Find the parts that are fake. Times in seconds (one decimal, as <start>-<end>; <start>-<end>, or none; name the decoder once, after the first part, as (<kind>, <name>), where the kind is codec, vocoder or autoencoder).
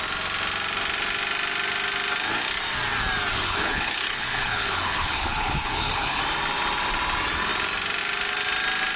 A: 3.3-6.2 (codec, HILCodec)